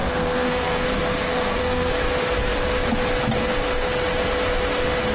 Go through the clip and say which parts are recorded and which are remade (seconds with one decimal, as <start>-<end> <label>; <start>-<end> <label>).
0.0-1.9 remade; 1.9-5.1 recorded